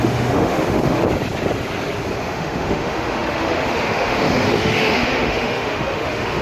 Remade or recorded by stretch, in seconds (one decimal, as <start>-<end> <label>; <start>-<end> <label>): 0.0-1.0 remade; 1.0-2.2 recorded; 2.2-6.4 remade